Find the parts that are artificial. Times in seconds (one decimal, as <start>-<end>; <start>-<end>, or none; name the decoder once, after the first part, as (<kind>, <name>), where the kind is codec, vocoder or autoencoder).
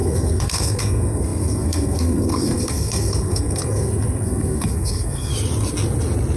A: 0.0-5.3 (codec, SNAC)